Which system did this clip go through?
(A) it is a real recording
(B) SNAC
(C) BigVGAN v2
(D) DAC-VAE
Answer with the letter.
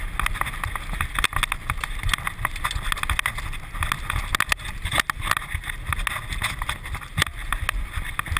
A